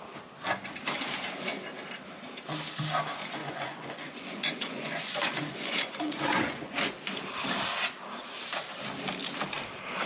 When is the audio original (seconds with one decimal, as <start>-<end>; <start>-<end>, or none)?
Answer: 0.0-3.4; 6.9-10.1